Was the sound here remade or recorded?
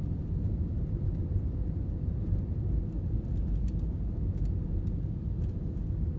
recorded